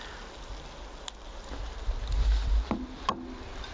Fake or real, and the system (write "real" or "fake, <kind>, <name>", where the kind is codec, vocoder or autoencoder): real